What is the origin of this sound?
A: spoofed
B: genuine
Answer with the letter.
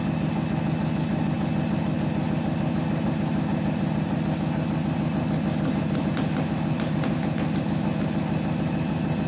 B